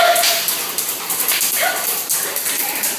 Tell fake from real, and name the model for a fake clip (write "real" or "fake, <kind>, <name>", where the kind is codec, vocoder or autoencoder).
fake, vocoder, BigVGAN v2